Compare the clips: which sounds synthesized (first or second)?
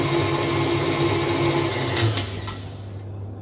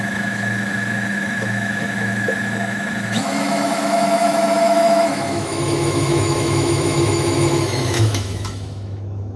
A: second